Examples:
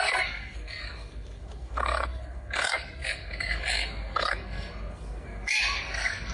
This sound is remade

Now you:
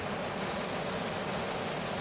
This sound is recorded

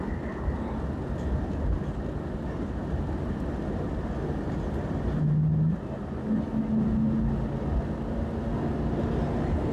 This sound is recorded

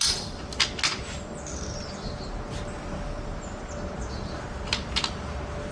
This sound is recorded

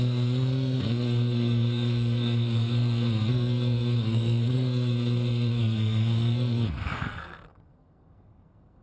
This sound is remade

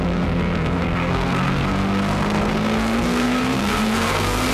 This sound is remade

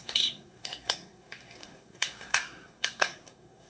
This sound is remade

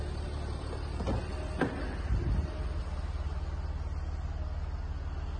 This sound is recorded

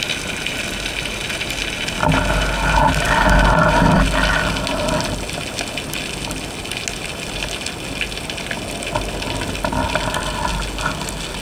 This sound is recorded